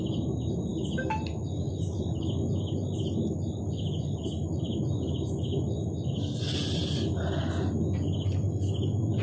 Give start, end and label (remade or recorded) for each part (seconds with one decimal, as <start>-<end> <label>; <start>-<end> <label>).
0.0-9.2 recorded